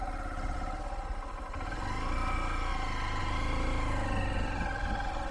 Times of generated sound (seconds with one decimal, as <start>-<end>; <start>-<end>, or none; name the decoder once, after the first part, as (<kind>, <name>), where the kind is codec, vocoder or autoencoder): none

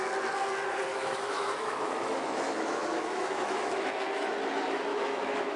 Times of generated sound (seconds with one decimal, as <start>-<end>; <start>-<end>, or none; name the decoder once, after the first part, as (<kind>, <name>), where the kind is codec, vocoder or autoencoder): 0.9-4.3 (autoencoder, DAC-VAE); 4.9-5.6

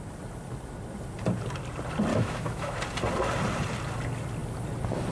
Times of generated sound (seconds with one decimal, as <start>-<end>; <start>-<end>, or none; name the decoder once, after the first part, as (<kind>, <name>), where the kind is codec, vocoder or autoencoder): 2.1-2.8 (autoencoder, DAC-VAE)

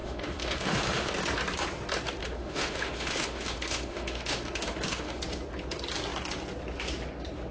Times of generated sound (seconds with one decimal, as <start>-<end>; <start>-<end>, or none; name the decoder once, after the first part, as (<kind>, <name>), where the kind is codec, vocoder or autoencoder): 0.0-1.1 (autoencoder, DAC-VAE); 2.2-5.2

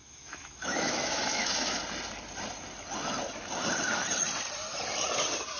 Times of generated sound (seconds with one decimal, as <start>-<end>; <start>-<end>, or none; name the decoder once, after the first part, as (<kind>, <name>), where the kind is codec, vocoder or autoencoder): 0.0-1.8 (autoencoder, DAC-VAE)